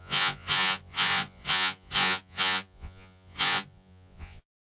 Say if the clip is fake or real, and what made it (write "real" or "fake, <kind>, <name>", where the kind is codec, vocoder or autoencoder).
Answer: fake, vocoder, Vocos